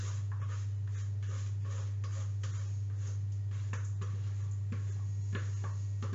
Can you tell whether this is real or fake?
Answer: real